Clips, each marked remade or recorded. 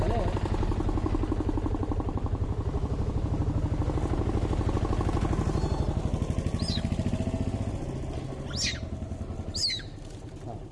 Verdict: recorded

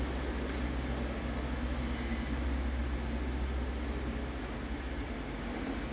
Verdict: recorded